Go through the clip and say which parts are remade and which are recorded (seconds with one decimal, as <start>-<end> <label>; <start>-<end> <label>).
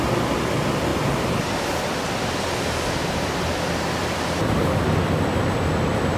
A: 0.0-0.9 recorded; 0.9-4.6 remade; 4.6-6.2 recorded